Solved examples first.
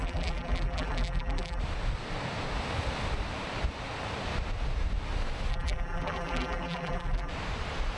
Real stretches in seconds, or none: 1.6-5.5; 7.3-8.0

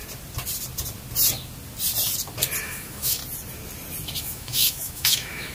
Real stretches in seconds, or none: 0.0-2.6; 3.2-4.2

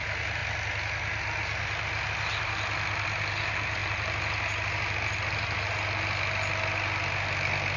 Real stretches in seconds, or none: 0.0-7.8